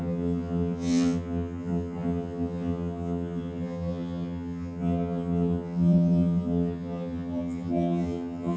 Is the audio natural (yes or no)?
no